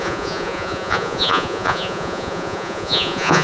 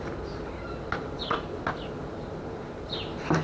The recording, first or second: second